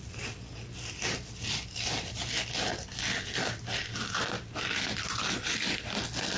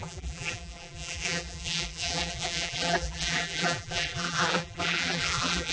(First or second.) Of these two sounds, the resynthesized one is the second